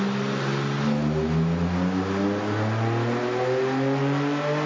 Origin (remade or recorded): recorded